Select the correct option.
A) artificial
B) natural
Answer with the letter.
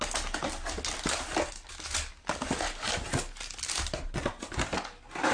B